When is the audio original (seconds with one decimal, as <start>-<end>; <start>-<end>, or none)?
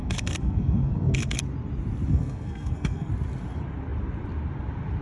1.4-2.1; 3.1-5.0